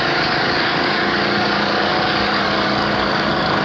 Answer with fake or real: fake